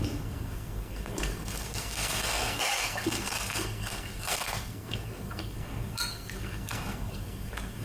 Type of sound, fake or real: fake